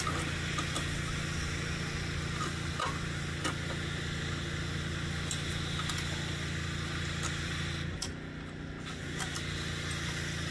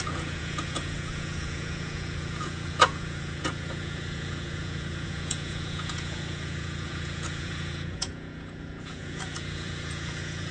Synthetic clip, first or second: second